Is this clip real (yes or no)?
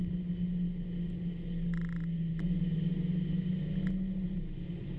yes